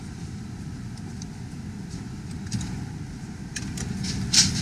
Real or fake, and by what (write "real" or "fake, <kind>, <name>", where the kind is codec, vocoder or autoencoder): real